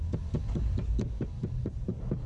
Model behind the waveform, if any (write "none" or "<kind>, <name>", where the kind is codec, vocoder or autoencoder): none